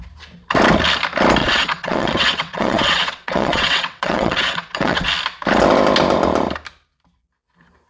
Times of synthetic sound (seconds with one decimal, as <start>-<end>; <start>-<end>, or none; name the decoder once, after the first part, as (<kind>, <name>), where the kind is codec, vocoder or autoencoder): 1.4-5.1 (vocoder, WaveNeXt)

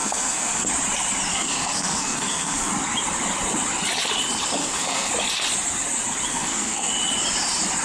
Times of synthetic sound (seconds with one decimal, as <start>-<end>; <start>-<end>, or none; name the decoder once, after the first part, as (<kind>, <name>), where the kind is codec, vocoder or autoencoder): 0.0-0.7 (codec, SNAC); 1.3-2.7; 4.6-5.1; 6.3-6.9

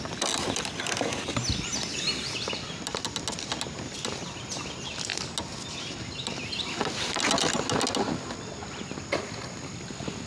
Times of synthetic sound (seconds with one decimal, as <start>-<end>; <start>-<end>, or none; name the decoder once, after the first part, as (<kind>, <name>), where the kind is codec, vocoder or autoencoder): none